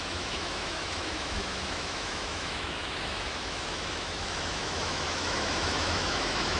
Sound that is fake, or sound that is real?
fake